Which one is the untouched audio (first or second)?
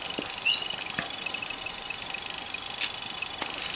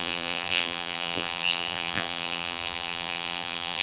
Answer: first